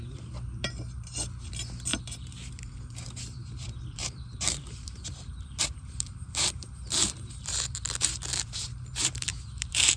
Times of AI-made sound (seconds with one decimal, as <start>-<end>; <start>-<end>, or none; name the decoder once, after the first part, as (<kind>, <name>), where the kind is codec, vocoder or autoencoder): 0.0-10.0 (vocoder, BigVGAN v2)